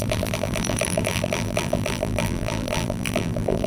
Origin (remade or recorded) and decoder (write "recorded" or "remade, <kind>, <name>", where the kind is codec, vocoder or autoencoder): remade, vocoder, BigVGAN v2